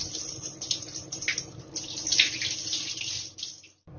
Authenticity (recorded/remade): recorded